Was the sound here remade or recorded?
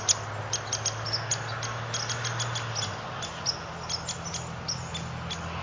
recorded